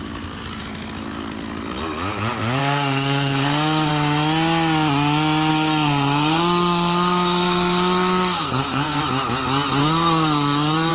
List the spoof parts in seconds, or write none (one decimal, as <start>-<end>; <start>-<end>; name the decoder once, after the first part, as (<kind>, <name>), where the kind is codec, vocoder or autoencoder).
2.6-3.9 (codec, SNAC); 5.5-9.0; 9.8-10.9

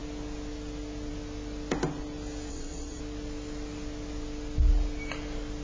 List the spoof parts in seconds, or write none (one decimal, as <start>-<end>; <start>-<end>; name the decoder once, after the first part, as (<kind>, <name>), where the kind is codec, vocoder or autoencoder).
2.5-3.0 (vocoder, WaveNeXt)

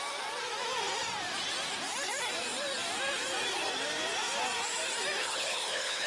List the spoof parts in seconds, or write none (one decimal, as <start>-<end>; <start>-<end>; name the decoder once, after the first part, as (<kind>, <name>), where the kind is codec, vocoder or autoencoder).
5.2-6.1 (codec, HILCodec)

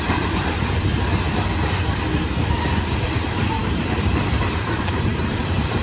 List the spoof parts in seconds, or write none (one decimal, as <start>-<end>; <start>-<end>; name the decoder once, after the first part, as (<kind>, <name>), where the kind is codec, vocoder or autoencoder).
0.0-0.9 (vocoder, BigVGAN v2); 3.1-5.8

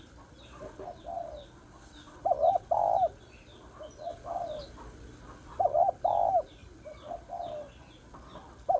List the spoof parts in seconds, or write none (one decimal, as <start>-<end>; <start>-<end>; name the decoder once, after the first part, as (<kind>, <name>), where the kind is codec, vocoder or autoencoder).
none

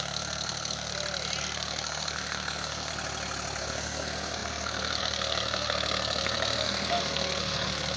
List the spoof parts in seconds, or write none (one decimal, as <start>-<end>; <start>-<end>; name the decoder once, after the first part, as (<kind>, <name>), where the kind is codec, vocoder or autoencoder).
0.0-0.9 (codec, SNAC); 1.4-2.9; 3.6-8.0

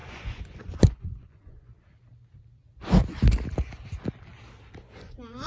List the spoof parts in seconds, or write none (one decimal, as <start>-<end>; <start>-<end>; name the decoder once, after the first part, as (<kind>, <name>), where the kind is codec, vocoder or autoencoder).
0.0-1.7 (vocoder, Vocos); 4.9-5.5

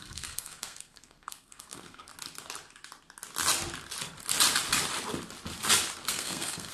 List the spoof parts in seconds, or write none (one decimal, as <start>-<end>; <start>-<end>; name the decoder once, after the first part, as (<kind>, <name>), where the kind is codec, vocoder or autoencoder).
0.0-2.1 (codec, SNAC); 6.1-6.7